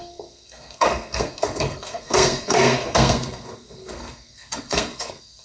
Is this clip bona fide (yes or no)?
no